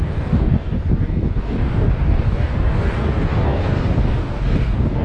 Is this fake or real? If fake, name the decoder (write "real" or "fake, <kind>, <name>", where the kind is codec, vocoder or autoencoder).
fake, codec, DAC